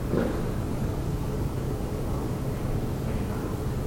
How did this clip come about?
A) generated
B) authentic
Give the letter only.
A